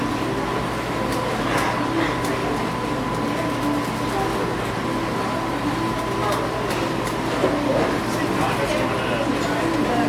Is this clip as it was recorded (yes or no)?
yes